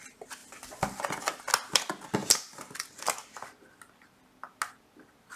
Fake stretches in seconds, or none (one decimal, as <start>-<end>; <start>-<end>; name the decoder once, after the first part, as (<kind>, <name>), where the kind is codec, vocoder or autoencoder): none